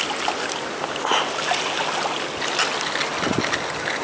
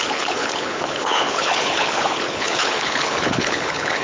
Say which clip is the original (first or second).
first